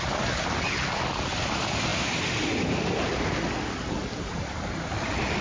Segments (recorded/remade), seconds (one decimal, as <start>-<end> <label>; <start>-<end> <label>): 0.0-5.4 recorded